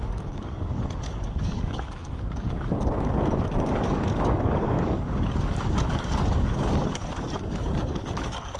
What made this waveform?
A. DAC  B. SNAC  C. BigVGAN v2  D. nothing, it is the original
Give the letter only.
A